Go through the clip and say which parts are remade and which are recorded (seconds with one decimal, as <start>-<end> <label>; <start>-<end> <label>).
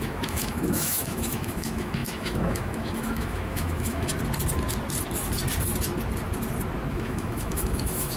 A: 0.0-4.1 remade; 4.1-6.9 recorded; 6.9-8.2 remade